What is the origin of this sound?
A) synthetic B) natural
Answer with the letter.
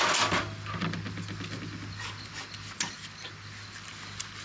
B